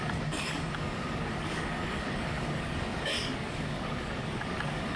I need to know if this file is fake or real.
fake